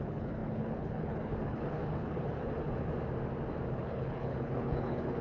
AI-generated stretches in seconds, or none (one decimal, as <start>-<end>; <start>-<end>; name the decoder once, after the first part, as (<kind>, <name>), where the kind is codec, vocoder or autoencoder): 0.0-2.9 (codec, HILCodec); 3.7-5.2